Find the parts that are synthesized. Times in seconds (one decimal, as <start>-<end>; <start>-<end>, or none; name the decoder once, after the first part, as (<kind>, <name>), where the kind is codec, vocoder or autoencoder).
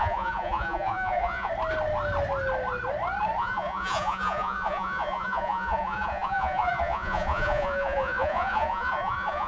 0.0-1.5 (vocoder, Vocos); 3.4-9.5